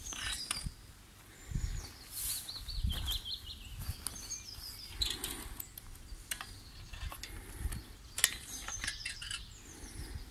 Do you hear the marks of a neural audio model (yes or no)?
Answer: no